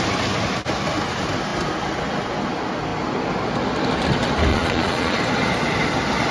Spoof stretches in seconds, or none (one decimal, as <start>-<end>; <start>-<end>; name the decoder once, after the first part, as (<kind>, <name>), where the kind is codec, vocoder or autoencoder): 4.5-5.2 (vocoder, Vocos)